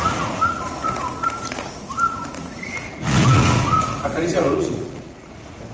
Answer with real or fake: fake